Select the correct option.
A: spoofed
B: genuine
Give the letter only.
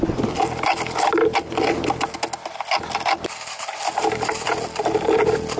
B